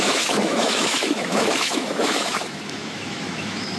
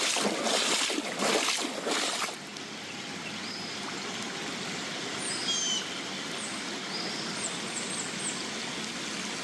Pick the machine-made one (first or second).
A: first